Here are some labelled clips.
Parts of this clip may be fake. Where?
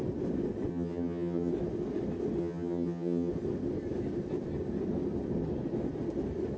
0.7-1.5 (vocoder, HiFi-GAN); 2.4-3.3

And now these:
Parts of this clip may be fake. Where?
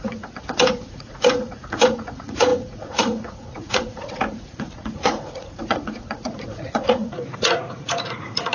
0.0-8.5 (vocoder, Vocos)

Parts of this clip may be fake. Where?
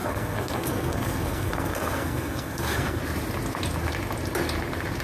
0.0-3.0 (codec, SNAC)